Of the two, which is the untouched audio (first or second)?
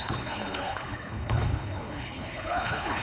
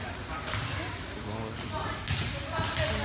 second